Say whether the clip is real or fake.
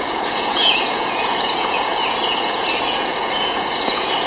fake